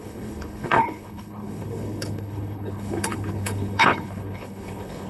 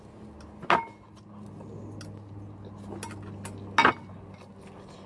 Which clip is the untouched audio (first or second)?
second